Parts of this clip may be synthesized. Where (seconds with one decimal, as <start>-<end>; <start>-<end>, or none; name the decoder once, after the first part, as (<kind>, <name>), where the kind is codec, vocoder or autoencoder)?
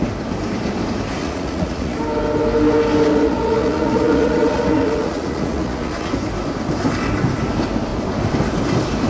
1.2-2.0 (vocoder, Vocos); 3.1-6.1